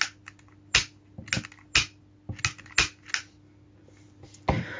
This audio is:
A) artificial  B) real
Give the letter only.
B